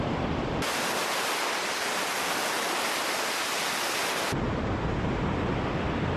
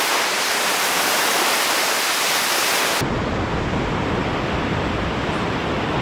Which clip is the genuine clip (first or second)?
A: first